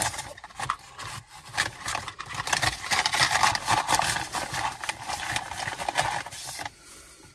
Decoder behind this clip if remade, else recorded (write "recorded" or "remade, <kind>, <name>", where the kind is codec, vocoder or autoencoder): recorded